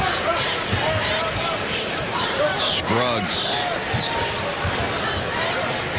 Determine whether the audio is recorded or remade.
recorded